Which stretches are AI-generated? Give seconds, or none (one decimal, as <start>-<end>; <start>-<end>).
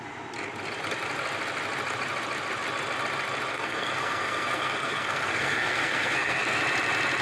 3.5-6.6